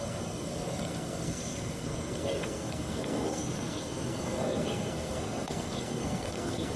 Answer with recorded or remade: remade